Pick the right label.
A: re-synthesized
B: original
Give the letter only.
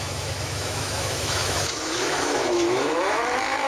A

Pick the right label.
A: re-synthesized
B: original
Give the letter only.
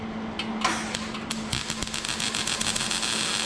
B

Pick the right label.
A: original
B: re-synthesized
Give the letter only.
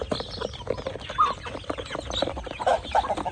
A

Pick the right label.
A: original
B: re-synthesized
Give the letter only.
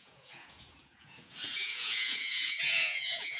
B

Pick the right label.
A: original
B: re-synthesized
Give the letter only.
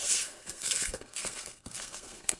B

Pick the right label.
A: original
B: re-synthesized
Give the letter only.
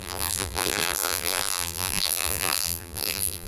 B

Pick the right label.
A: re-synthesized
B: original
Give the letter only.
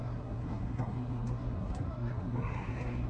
A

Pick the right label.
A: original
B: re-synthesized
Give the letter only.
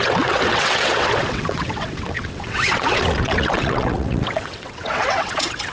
B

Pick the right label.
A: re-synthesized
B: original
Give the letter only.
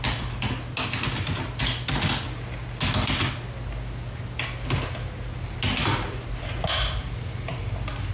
B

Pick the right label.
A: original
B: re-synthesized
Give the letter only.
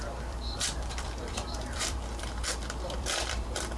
B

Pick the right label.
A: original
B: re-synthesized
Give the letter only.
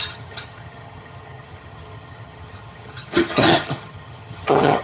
B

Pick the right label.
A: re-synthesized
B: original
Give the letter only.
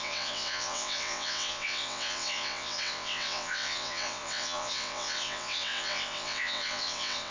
A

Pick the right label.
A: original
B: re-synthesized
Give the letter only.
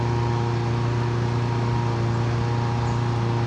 A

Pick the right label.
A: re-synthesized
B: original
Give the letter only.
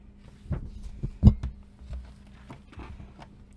B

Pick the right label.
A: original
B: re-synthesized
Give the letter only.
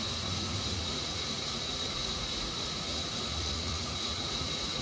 B